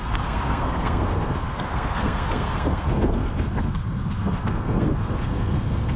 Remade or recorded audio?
remade